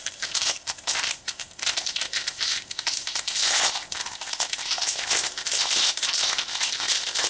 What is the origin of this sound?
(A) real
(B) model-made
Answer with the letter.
B